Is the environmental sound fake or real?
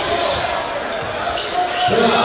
real